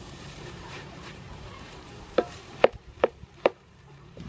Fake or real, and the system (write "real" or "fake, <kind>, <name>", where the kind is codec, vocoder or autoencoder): fake, vocoder, BigVGAN v2